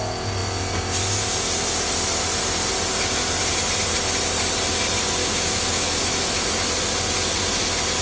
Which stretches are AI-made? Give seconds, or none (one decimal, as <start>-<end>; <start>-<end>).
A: 5.2-6.2